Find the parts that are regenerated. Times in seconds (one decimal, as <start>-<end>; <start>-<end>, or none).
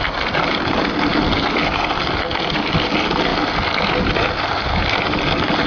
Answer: none